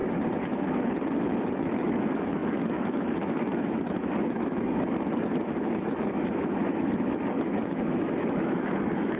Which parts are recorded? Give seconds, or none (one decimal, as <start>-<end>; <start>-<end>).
0.0-1.2